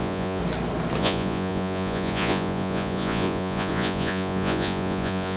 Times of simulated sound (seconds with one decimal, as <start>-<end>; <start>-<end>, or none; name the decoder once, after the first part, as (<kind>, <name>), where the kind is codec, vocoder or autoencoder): 0.0-0.4 (vocoder, Vocos); 1.0-5.4